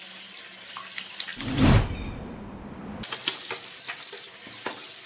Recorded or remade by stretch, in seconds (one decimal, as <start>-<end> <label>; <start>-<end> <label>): 0.0-1.3 recorded; 1.3-4.4 remade; 4.4-5.1 recorded